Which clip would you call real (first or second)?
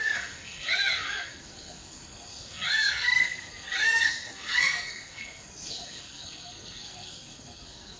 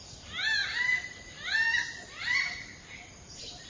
second